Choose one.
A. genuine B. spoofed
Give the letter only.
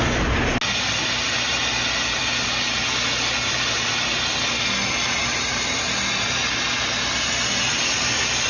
A